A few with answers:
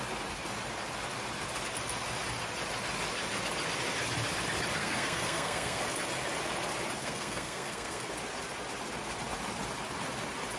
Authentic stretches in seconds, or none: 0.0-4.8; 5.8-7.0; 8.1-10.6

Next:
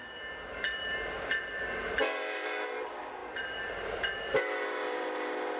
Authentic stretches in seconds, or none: none

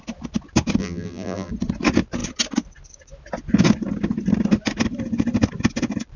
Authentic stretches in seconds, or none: 0.0-0.8; 1.5-6.2